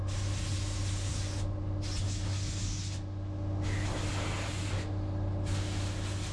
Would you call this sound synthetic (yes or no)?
no